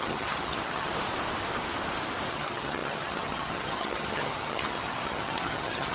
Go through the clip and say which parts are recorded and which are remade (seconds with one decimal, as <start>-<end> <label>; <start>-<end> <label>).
0.0-0.9 remade; 0.9-2.3 recorded; 2.3-5.9 remade